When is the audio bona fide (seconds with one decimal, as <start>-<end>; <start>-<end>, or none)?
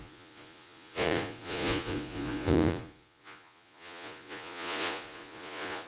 none